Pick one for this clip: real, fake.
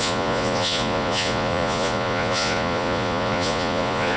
fake